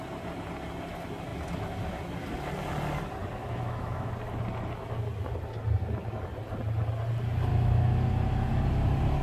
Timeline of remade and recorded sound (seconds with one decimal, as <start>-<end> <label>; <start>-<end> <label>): 0.0-3.4 recorded; 3.4-4.1 remade; 4.1-7.5 recorded; 7.5-8.0 remade; 8.0-9.2 recorded